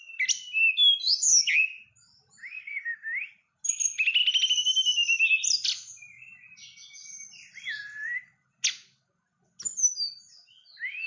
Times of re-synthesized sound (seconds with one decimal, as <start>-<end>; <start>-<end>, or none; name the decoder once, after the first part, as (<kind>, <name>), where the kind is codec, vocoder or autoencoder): none